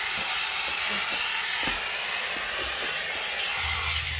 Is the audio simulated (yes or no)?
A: no